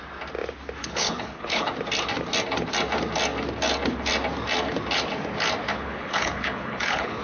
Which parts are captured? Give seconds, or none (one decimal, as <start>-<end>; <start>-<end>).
0.0-0.8; 1.7-5.7